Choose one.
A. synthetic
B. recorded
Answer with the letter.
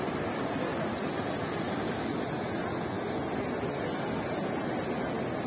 B